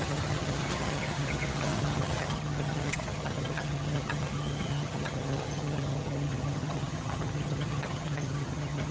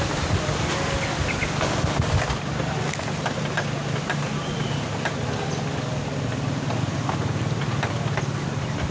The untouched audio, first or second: second